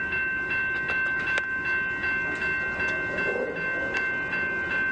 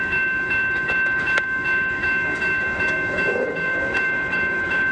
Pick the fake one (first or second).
second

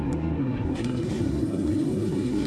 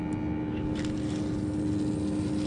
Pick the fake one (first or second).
first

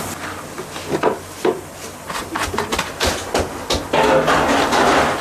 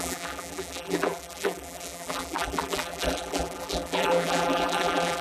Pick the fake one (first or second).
second